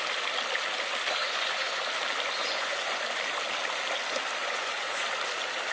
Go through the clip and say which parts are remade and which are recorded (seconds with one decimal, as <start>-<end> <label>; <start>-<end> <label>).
0.0-1.2 recorded; 1.2-1.8 remade; 1.8-2.4 recorded; 2.4-3.0 remade; 3.0-4.4 recorded; 4.4-5.1 remade; 5.1-5.7 recorded